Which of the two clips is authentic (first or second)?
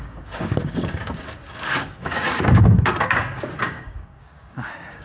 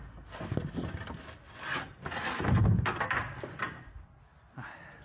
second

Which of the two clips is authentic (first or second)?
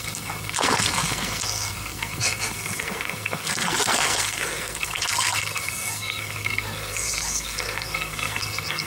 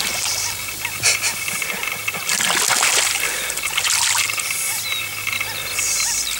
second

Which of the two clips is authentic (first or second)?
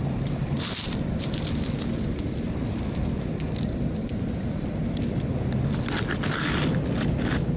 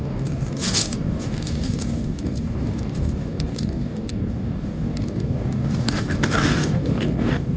first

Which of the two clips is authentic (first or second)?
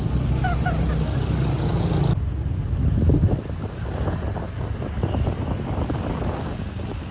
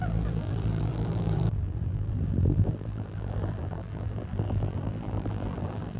first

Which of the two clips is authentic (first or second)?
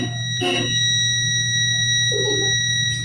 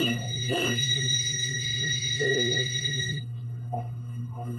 first